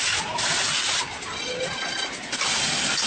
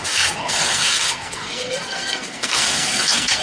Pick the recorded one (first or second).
first